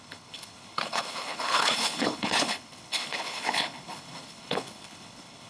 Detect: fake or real fake